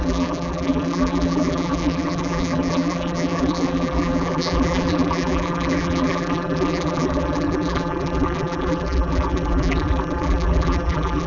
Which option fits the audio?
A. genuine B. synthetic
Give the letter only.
B